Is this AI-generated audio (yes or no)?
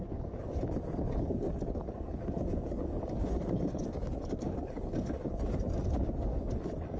yes